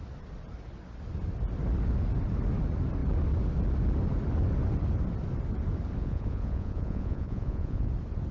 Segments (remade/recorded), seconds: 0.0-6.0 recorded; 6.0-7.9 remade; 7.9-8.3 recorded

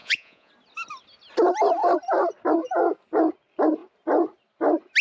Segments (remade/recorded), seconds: 0.0-0.5 remade; 0.5-5.0 recorded

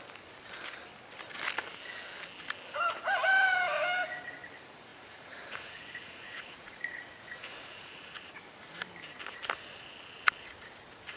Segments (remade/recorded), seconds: 0.0-4.9 recorded; 4.9-8.1 remade; 8.1-11.2 recorded

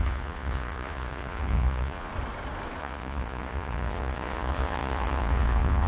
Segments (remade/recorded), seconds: 0.0-2.1 remade; 2.1-2.8 recorded; 2.8-5.9 remade

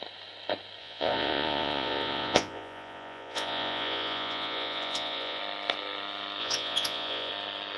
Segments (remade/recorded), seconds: 0.0-0.8 recorded; 0.8-5.4 remade; 5.4-6.4 recorded; 6.4-7.3 remade; 7.3-7.8 recorded

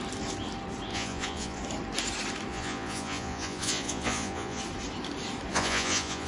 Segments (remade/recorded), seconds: 0.0-0.9 recorded; 0.9-1.6 remade; 1.6-2.5 recorded; 2.5-4.6 remade; 4.6-5.5 recorded; 5.5-6.3 remade